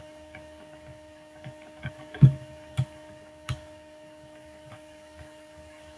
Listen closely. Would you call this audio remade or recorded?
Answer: remade